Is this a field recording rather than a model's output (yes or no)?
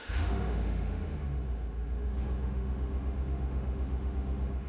no